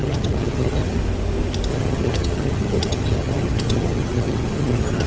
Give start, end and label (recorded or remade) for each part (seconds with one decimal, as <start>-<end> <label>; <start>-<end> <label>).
0.0-1.0 remade; 1.0-1.7 recorded; 1.7-5.1 remade